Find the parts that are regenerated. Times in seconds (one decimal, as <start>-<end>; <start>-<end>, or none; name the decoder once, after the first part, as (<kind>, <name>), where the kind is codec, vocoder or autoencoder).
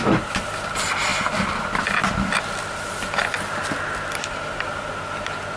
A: none